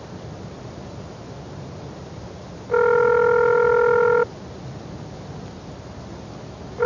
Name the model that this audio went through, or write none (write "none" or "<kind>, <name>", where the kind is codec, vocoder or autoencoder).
none